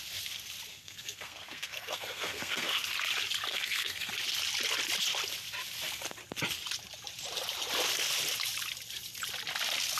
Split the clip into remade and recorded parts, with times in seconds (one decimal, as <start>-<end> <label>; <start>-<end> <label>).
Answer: 0.0-0.7 recorded; 0.7-2.8 remade; 2.8-3.5 recorded; 3.5-4.1 remade; 4.1-10.0 recorded